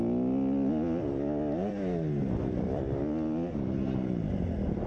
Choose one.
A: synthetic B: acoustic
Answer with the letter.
B